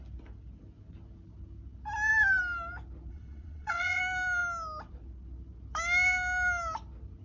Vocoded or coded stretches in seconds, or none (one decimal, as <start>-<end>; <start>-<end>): 3.1-4.0